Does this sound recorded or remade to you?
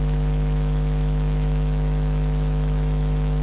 remade